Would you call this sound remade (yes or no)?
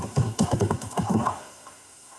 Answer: yes